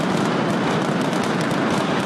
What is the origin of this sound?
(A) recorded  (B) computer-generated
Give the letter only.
A